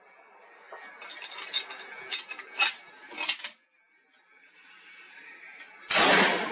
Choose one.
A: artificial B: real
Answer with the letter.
B